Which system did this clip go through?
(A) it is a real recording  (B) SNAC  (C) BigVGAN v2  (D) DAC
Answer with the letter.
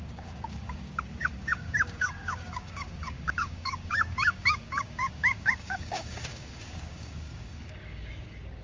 D